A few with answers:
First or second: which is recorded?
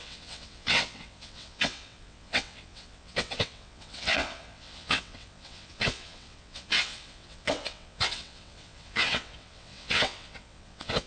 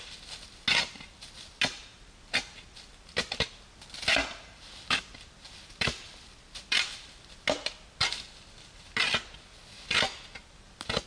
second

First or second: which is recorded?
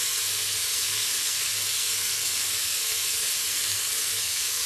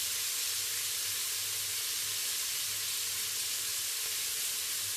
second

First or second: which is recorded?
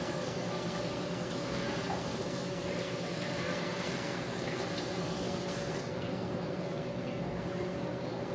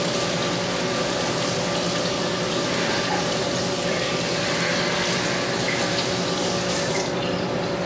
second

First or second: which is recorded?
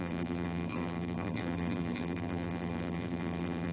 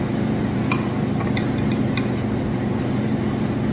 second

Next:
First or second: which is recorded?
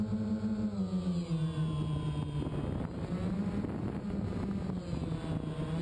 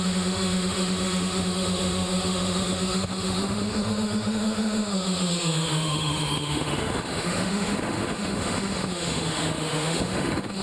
first